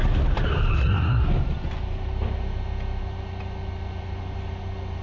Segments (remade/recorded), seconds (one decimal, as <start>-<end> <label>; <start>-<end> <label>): 0.0-0.8 recorded; 0.8-1.3 remade; 1.3-5.0 recorded